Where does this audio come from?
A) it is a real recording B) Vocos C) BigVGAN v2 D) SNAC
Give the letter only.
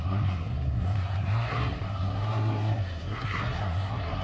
D